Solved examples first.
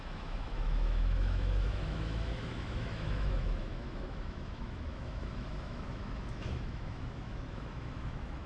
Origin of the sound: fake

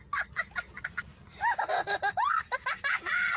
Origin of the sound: real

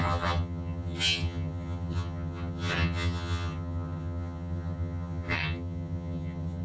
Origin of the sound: fake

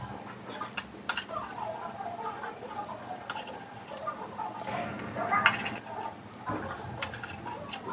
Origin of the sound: real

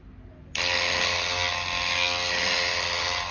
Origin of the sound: real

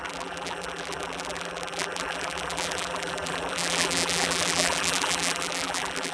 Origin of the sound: fake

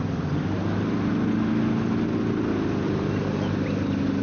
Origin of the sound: real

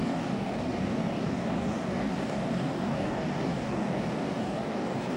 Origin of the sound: fake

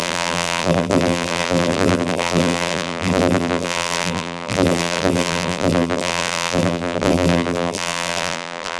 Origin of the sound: fake